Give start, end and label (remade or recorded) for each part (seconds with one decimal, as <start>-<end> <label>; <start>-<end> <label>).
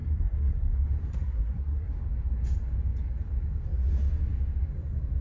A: 0.0-0.7 remade; 0.7-1.1 recorded; 1.1-1.9 remade; 1.9-5.2 recorded